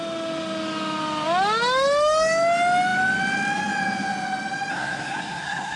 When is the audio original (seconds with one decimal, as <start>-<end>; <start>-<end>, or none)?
0.0-4.7